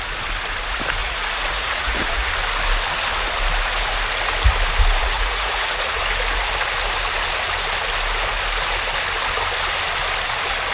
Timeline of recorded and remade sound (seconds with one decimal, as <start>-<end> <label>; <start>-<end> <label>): 0.0-1.0 recorded; 1.0-2.3 remade; 2.3-5.0 recorded; 5.0-6.0 remade; 6.0-10.7 recorded

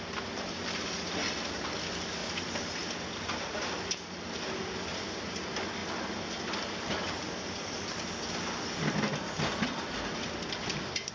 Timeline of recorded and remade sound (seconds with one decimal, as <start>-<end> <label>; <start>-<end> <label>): 0.0-11.1 recorded

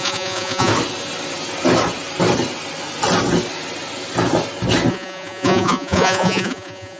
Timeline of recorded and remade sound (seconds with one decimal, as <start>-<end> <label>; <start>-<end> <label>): 0.0-0.7 remade; 0.7-4.9 recorded; 4.9-7.0 remade

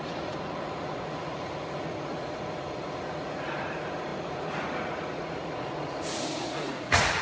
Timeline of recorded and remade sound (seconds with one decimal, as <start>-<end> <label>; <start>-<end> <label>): 0.0-7.2 remade

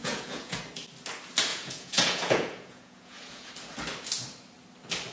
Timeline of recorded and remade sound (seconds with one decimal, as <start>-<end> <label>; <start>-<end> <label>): 0.0-0.6 remade; 0.6-1.5 recorded; 1.5-3.5 remade; 3.5-5.1 recorded